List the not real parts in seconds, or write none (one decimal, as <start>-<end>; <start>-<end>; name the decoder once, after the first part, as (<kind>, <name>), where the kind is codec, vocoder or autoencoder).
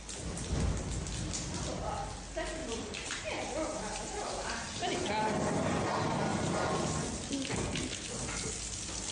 2.6-5.1 (vocoder, BigVGAN v2); 6.3-6.9